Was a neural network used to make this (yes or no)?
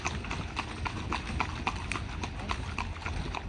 no